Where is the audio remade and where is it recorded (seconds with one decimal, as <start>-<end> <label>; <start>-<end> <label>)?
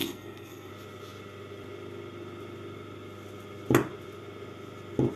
0.0-0.7 remade; 0.7-5.2 recorded